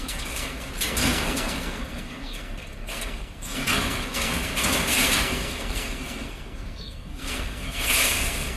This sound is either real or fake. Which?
fake